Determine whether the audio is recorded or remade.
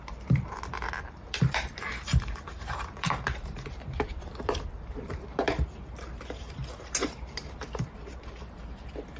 remade